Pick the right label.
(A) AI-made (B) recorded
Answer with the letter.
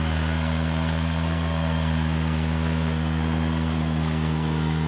A